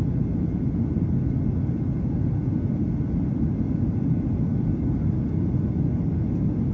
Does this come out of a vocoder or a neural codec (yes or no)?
no